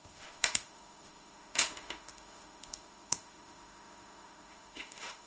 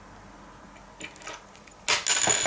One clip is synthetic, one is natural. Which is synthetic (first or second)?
first